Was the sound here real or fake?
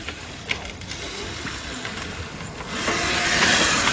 real